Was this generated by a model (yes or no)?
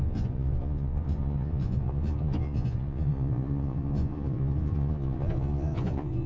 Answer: yes